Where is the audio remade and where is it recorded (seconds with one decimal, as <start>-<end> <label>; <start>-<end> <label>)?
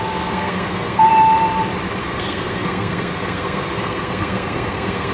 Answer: 0.0-1.1 remade; 1.1-2.0 recorded; 2.0-5.1 remade